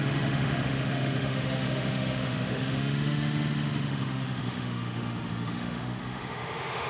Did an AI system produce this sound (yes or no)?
yes